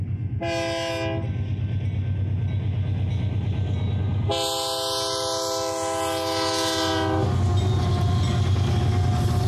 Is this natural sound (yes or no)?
yes